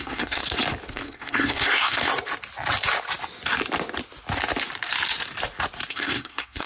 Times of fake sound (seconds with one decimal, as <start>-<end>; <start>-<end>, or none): 0.0-0.4; 0.9-2.1; 5.9-6.7